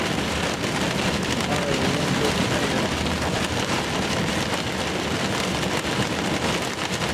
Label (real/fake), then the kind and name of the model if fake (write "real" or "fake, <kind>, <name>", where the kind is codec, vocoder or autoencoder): real